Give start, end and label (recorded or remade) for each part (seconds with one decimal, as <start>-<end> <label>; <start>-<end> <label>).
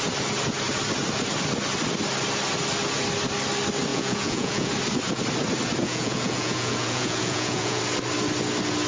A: 0.0-3.9 recorded; 3.9-4.7 remade; 4.7-5.8 recorded; 5.8-7.8 remade; 7.8-8.9 recorded